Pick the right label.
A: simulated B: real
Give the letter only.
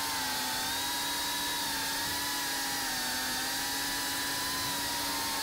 B